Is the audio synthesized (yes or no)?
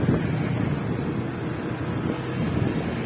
no